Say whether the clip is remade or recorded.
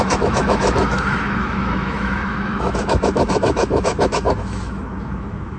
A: remade